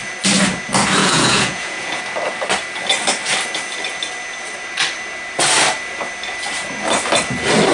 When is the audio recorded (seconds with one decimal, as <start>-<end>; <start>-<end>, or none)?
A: 0.0-1.0; 2.0-7.7